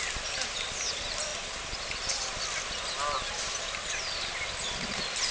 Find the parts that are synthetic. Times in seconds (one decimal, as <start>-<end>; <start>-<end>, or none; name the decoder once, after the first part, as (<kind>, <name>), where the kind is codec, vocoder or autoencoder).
none